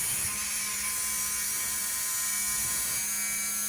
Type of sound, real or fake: real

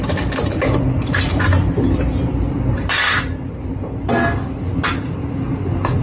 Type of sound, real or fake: real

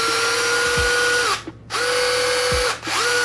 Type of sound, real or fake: real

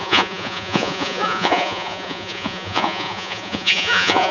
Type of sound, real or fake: fake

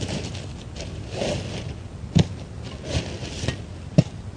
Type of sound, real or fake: real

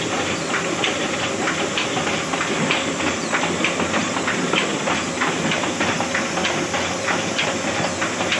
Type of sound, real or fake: real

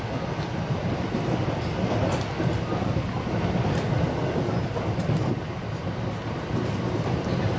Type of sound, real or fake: real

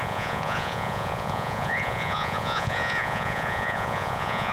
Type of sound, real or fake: fake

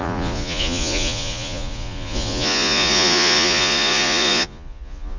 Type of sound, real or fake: fake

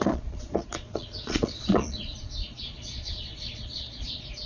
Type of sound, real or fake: fake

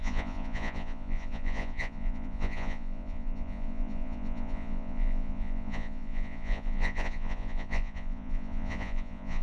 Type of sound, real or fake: fake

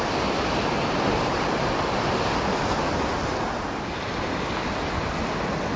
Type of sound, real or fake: real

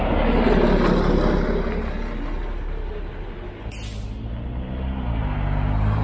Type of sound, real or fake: real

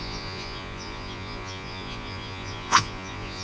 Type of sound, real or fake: fake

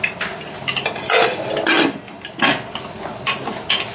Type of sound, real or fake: real